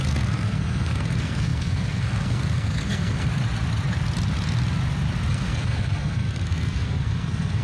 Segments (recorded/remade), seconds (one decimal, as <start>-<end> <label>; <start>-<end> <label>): 0.0-3.3 remade; 3.3-5.3 recorded; 5.3-7.6 remade